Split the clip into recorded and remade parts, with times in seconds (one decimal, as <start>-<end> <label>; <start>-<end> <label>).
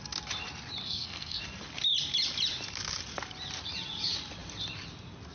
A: 0.0-0.8 recorded; 0.8-1.4 remade; 1.4-5.3 recorded